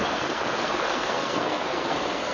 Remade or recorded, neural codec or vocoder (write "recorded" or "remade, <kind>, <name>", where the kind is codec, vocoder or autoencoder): remade, codec, SNAC